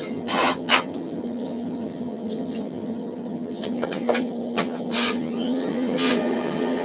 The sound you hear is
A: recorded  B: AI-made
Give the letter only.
B